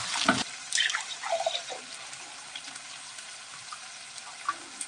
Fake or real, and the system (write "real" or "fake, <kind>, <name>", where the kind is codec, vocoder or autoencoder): fake, vocoder, BigVGAN v2